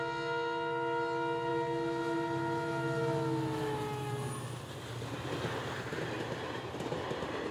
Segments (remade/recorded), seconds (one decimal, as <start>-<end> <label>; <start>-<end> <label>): 0.0-7.5 recorded